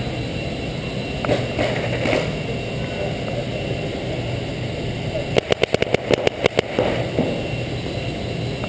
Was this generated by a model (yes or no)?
no